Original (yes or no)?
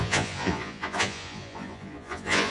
no